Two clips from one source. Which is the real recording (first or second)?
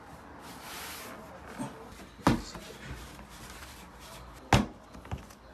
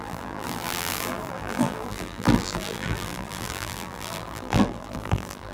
first